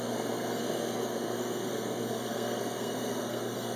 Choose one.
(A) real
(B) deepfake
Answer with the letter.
B